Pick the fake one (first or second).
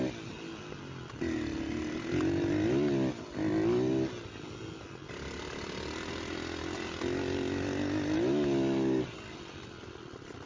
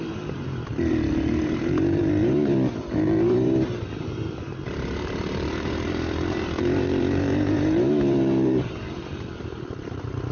second